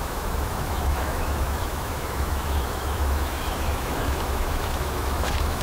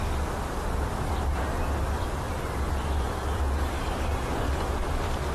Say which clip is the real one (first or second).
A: second